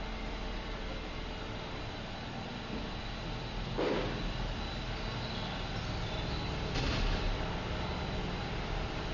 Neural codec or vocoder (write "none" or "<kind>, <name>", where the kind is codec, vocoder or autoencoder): none